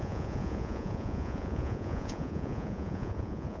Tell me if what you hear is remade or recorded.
remade